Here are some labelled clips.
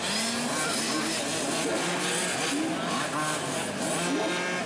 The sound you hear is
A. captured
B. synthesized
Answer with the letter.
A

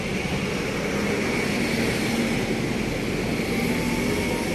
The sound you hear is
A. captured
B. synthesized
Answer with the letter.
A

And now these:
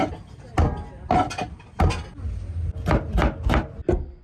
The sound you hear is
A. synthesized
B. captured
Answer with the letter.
B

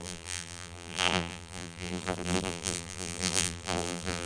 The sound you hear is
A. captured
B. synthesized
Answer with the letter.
B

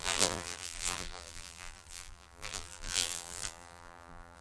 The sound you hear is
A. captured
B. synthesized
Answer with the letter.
B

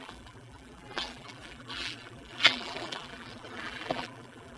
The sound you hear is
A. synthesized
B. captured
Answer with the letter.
A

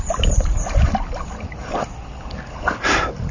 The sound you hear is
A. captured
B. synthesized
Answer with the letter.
A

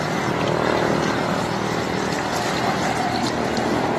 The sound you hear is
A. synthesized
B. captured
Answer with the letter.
B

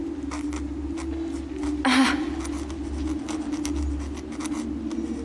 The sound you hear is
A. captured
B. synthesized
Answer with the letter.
A